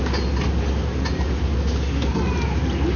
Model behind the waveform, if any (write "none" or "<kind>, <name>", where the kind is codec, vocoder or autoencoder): none